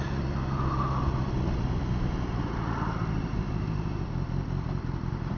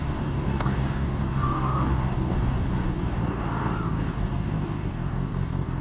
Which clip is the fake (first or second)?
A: second